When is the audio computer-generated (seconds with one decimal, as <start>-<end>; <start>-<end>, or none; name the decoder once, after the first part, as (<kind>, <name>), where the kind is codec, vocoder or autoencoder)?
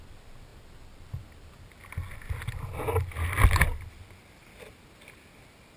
none